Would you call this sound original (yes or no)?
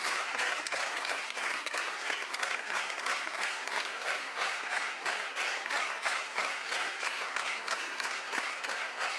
no